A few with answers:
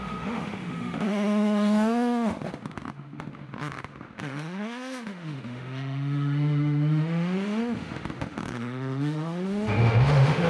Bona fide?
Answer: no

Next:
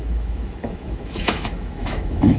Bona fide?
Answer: no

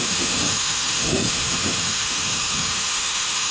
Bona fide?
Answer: no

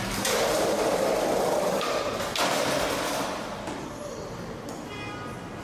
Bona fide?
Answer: yes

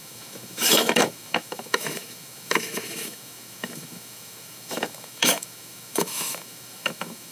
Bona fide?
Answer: no